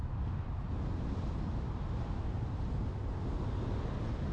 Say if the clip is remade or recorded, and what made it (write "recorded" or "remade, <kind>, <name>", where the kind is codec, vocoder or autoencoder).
recorded